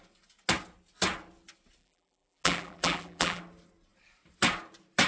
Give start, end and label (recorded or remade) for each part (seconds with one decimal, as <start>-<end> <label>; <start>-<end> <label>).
0.0-1.8 recorded; 1.8-3.4 remade; 3.4-5.1 recorded